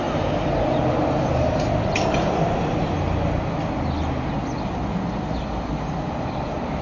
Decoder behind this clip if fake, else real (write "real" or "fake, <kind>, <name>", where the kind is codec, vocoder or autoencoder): real